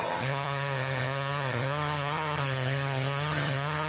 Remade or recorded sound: remade